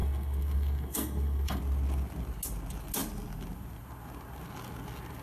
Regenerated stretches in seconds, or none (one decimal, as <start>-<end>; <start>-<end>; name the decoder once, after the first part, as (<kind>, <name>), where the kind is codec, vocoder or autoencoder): 0.0-1.6 (codec, SNAC)